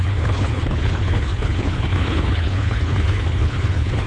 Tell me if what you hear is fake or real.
fake